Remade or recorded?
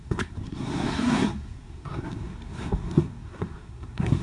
remade